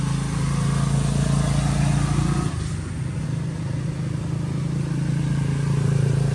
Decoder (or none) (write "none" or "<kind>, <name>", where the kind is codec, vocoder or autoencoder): none